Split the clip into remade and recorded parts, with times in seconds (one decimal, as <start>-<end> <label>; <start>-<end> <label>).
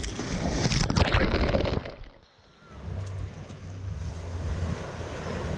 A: 0.0-5.6 recorded